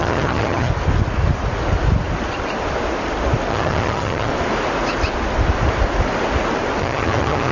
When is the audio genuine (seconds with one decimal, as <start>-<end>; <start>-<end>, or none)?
0.7-3.5; 4.3-6.8